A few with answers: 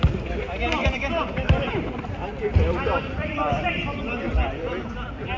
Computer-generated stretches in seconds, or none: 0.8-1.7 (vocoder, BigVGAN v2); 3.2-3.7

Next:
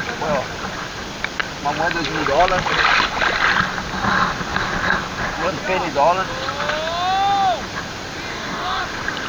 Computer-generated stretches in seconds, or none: 8.3-8.8 (codec, DAC)

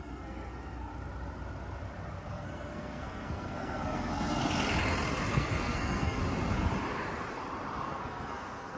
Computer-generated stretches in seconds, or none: 0.0-0.9 (codec, SNAC); 2.3-4.4; 5.3-6.2; 7.8-8.8